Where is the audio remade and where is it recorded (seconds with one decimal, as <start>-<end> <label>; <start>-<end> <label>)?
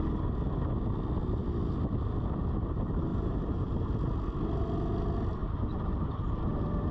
0.0-3.1 recorded; 3.1-3.8 remade; 3.8-6.9 recorded